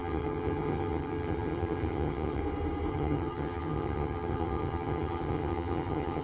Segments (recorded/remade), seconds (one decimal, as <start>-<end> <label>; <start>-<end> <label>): 0.0-2.4 remade; 2.4-2.9 recorded; 2.9-6.2 remade